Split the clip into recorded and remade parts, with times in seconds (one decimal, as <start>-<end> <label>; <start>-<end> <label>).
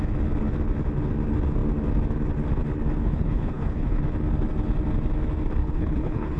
0.0-3.0 recorded; 3.0-4.0 remade; 4.0-5.6 recorded; 5.6-6.4 remade